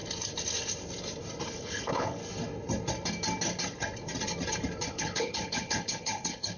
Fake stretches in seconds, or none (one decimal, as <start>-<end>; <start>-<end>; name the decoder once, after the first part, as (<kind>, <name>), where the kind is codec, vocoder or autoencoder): 1.5-2.2 (codec, HILCodec); 4.9-6.6